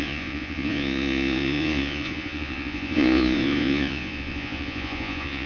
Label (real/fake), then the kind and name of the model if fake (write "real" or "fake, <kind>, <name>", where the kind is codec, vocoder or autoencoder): fake, vocoder, Vocos